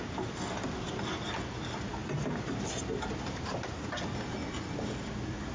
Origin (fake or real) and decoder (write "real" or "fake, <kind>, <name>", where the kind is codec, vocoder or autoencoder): real